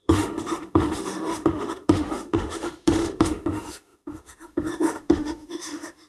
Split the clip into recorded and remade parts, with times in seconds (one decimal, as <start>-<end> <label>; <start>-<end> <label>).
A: 0.0-6.1 remade